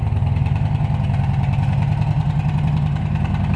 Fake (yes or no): no